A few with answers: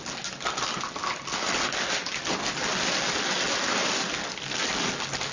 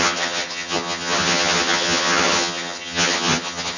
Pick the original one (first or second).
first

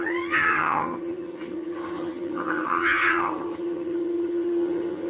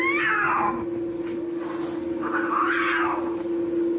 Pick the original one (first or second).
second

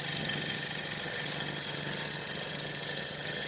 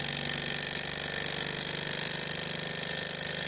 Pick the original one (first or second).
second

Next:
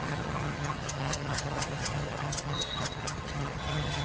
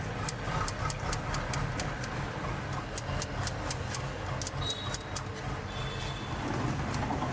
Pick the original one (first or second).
second